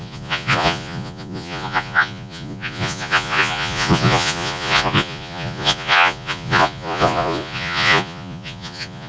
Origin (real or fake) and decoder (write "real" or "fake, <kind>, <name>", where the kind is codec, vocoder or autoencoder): fake, vocoder, Vocos